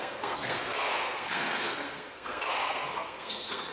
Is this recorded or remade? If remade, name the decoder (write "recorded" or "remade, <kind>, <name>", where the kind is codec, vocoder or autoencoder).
remade, codec, SNAC